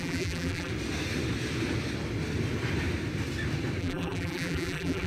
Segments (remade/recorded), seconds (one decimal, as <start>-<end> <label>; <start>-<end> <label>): 0.0-0.7 remade; 0.7-3.8 recorded; 3.8-5.1 remade